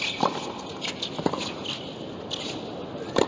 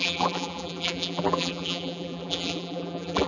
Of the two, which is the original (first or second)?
first